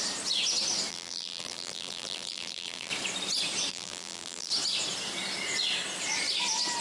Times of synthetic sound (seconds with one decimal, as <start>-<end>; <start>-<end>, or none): 0.9-2.9; 3.7-4.5

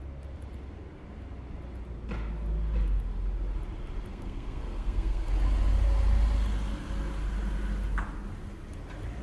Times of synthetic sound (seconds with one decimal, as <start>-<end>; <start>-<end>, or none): 4.1-5.3

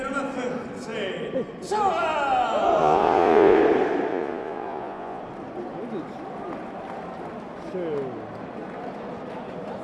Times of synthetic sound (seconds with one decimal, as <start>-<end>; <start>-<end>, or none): 2.8-3.6; 4.1-5.2

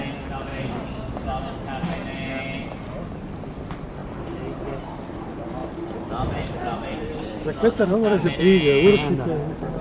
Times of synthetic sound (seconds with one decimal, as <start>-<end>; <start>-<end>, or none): 0.5-1.4; 4.0-4.7; 5.6-8.4